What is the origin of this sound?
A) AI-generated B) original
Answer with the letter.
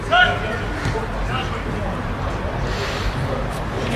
B